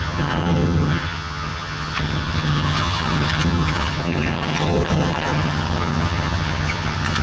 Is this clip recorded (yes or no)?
no